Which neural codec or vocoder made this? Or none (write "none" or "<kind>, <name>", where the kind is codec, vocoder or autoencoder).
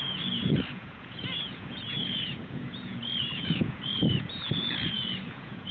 vocoder, Vocos